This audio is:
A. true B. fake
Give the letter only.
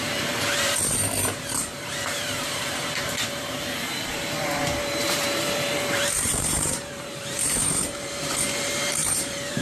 B